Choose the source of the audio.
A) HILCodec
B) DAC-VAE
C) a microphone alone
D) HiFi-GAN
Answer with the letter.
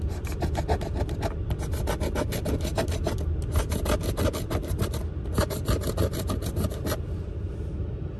C